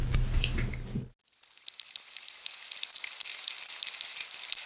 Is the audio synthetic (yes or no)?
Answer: no